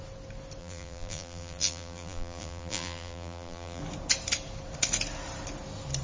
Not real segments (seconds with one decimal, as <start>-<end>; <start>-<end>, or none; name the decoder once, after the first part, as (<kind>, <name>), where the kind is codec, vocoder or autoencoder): 0.6-3.8 (vocoder, BigVGAN v2)